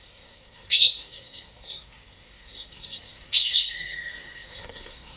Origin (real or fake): fake